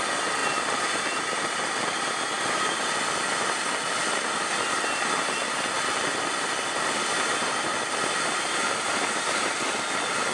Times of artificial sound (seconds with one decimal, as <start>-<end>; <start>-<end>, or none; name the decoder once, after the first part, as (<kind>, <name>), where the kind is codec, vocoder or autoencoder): none